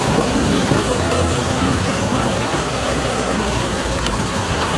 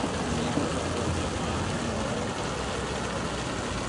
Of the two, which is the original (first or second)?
second